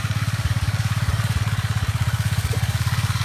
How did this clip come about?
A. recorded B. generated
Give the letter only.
B